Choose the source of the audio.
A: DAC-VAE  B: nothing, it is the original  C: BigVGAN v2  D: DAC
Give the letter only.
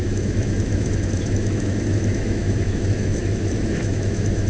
A